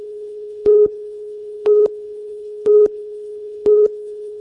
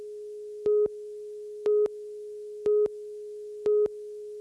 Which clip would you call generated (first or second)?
first